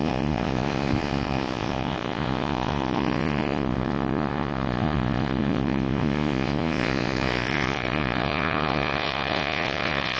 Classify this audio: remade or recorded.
remade